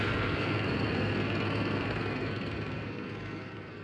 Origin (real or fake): fake